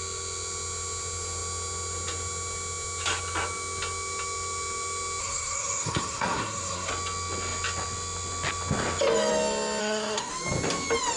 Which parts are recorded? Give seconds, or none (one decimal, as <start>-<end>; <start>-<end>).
0.0-5.2; 6.9-9.8; 10.3-11.2